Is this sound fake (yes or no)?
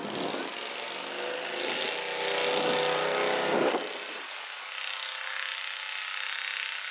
no